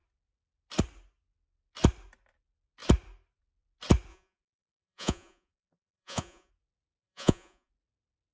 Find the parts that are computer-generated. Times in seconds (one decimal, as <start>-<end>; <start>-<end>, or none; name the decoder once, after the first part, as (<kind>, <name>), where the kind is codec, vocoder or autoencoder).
4.1-6.5 (vocoder, Vocos); 7.0-7.7